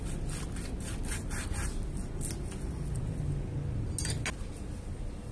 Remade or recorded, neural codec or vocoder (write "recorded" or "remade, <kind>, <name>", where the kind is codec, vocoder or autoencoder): recorded